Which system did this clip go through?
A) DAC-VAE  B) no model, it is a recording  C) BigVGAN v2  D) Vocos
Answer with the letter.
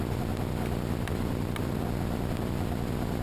B